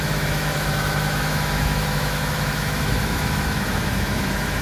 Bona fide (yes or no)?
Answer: no